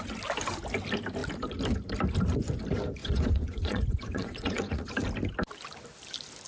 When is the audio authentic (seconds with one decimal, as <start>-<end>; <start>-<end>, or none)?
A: 0.0-3.0; 4.9-6.5